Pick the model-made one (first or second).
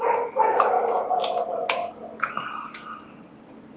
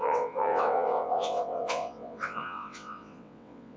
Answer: second